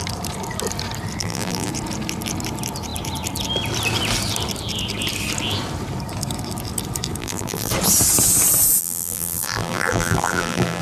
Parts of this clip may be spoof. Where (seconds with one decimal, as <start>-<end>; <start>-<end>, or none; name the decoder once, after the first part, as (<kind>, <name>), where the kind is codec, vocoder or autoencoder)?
1.2-1.7 (vocoder, BigVGAN v2); 7.2-7.7; 8.8-10.8